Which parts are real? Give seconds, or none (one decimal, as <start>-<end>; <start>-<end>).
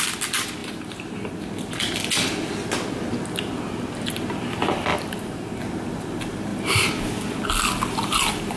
0.0-0.6; 1.3-4.9; 5.6-6.5; 7.0-8.6